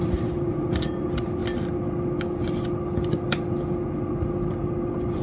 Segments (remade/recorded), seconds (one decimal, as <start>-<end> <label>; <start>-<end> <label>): 0.0-1.4 remade; 1.4-4.5 recorded; 4.5-5.2 remade